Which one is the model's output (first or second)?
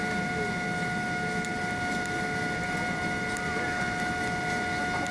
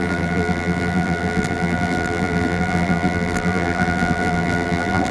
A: second